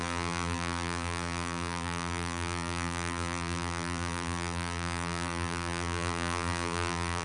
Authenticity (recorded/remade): remade